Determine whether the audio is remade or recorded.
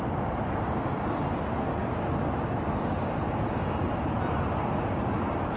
recorded